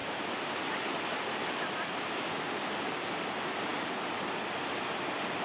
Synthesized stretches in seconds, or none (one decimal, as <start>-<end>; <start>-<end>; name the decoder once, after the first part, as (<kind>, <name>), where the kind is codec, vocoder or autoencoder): none